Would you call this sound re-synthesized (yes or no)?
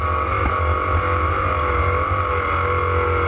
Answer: no